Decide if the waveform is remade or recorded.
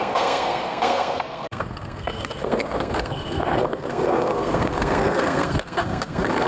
remade